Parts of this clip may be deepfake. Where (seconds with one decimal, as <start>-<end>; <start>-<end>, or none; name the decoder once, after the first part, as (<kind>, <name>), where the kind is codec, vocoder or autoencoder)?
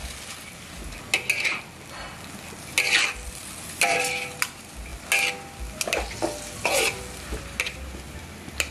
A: 3.3-4.9 (vocoder, BigVGAN v2); 6.7-8.7